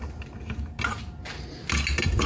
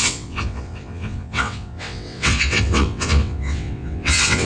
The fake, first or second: second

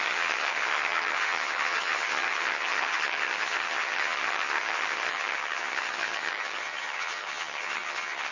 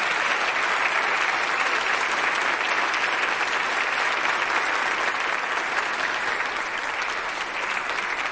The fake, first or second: first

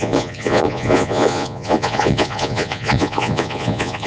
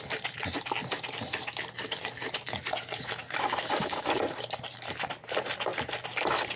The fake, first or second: first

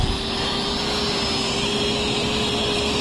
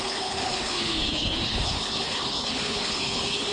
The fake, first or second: second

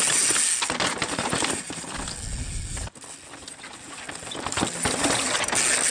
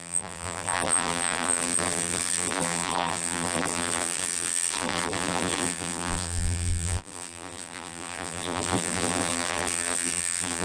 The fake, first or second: second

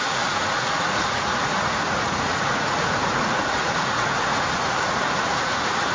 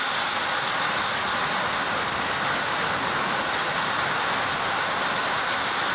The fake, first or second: first